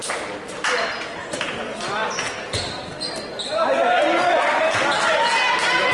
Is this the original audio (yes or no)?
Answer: yes